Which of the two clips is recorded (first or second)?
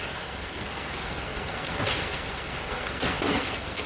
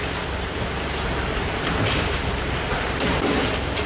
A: second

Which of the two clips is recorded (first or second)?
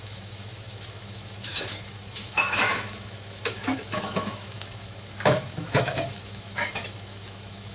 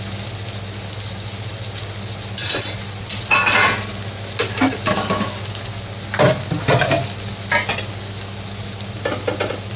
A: second